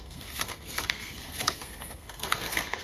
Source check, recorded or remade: remade